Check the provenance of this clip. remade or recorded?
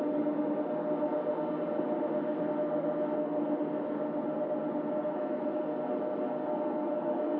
recorded